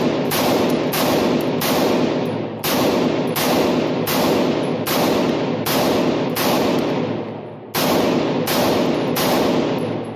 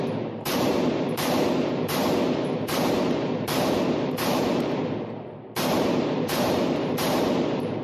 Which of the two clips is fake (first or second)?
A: second